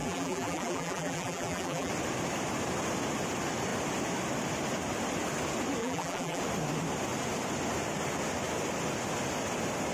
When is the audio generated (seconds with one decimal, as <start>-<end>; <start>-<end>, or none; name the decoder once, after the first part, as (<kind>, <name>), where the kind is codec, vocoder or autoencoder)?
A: 0.0-1.9 (vocoder, BigVGAN v2); 5.8-6.4